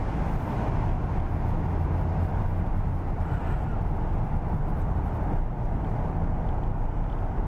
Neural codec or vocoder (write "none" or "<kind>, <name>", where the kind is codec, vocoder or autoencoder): none